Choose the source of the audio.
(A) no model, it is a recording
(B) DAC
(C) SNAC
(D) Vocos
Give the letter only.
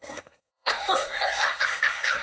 C